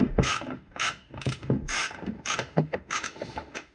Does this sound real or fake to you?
fake